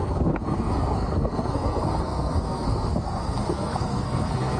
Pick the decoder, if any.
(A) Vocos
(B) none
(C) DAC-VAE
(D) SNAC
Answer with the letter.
D